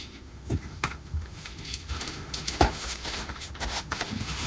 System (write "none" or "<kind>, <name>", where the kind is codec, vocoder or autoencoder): autoencoder, DAC-VAE